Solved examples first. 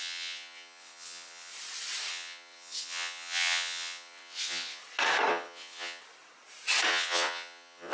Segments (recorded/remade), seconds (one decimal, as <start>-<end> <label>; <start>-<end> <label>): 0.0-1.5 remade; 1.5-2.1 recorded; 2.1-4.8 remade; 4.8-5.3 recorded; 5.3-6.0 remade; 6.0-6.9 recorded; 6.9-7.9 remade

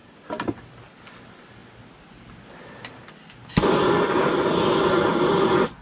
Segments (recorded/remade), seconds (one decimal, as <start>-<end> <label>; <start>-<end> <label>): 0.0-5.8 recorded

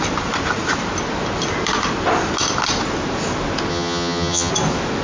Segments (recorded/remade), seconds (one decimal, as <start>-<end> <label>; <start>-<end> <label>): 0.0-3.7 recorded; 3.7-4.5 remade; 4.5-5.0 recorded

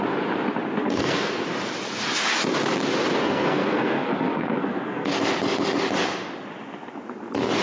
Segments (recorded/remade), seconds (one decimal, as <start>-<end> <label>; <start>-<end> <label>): 0.0-0.8 recorded; 0.8-1.3 remade; 1.3-3.2 recorded; 3.2-5.2 remade; 5.2-7.6 recorded

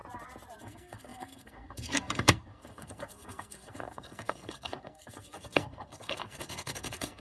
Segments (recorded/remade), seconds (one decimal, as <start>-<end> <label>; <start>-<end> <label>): 0.0-0.6 recorded; 0.6-7.2 remade

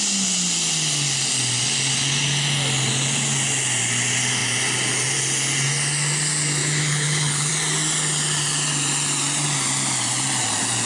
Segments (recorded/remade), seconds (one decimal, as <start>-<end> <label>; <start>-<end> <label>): 0.0-6.6 recorded; 6.6-7.5 remade; 7.5-10.9 recorded

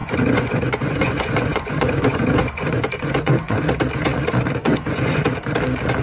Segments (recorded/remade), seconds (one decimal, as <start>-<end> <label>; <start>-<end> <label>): 0.0-3.6 remade; 3.6-4.6 recorded; 4.6-5.2 remade; 5.2-6.0 recorded

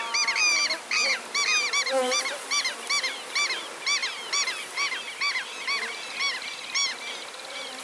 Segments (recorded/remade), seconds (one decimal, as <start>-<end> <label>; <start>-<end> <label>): 0.0-7.8 recorded